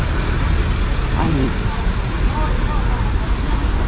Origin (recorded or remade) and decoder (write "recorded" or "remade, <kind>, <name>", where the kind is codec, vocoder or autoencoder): recorded